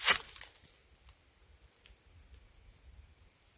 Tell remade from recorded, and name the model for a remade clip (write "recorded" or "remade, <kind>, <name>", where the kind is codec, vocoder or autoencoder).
recorded